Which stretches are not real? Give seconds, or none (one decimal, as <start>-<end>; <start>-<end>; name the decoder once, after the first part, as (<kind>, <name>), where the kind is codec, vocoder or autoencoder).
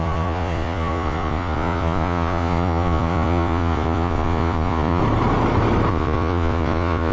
0.0-5.0 (vocoder, Vocos); 5.9-7.1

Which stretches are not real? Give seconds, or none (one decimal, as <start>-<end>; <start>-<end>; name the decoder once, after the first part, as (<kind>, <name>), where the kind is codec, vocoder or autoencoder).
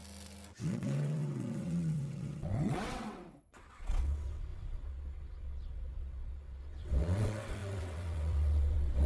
0.6-9.1 (vocoder, WaveNeXt)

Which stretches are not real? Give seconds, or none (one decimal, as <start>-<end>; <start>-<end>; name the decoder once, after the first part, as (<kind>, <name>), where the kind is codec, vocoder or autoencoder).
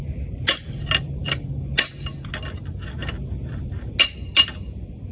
none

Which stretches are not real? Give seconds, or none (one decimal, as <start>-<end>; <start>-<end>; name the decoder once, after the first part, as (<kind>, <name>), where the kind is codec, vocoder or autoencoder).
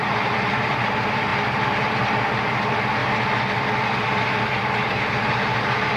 0.0-3.0 (vocoder, BigVGAN v2); 4.8-6.0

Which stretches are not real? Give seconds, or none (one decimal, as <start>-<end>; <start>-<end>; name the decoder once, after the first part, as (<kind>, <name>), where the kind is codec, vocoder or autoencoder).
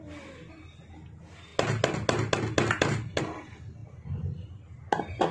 none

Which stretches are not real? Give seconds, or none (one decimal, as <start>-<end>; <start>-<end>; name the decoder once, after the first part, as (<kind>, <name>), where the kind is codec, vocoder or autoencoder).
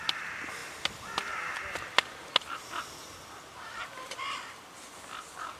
none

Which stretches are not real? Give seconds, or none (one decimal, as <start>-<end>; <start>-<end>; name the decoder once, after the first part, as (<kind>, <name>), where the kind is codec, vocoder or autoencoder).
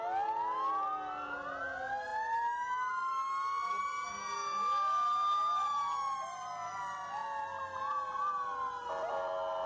none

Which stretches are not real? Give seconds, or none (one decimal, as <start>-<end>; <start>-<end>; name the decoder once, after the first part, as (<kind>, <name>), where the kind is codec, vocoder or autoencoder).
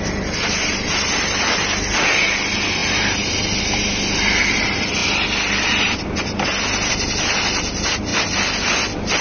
8.1-9.2 (vocoder, BigVGAN v2)